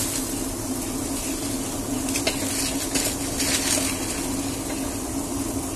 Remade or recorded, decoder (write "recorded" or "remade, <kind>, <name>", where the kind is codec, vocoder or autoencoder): recorded